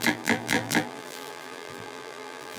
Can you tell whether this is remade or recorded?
remade